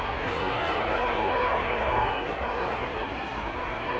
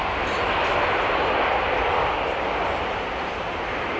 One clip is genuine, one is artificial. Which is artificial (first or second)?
first